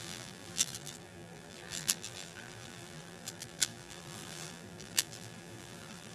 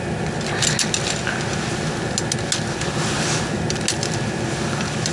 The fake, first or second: first